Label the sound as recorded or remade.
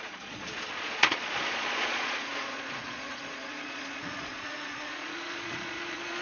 remade